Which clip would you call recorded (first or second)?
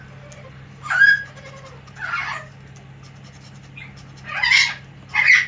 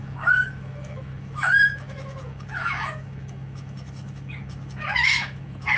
first